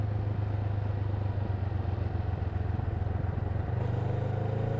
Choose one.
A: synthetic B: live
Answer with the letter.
B